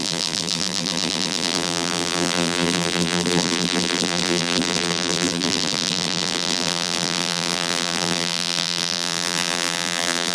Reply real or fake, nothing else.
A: fake